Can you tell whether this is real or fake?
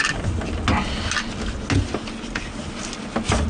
real